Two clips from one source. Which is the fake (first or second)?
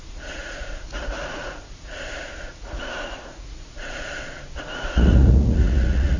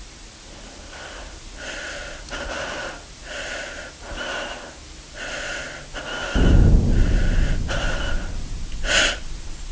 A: first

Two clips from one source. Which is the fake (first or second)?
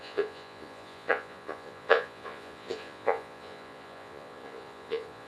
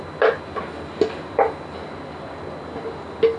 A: first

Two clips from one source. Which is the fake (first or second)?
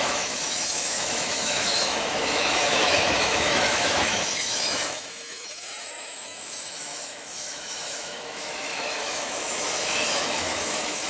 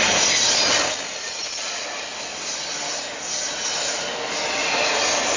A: first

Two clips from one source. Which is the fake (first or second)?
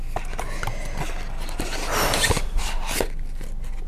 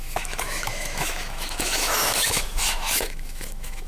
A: second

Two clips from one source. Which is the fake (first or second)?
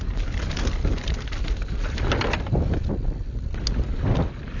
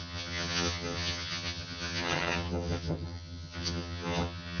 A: second